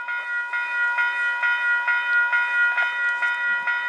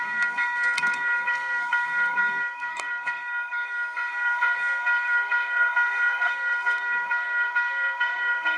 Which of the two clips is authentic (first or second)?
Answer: first